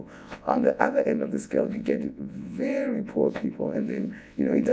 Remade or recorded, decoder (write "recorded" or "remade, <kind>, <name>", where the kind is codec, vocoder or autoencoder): remade, vocoder, WaveNeXt